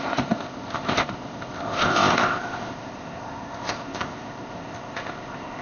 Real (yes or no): no